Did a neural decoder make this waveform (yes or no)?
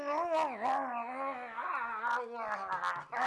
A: no